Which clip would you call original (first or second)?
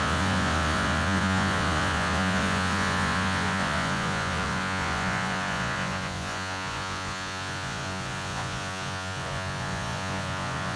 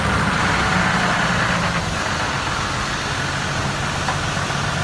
second